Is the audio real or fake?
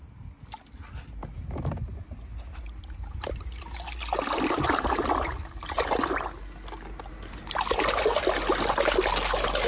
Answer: real